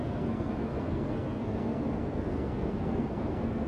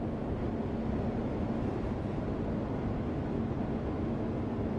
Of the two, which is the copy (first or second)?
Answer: first